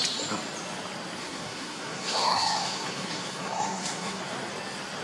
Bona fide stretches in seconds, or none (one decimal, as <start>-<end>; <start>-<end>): 0.0-1.2; 4.2-5.0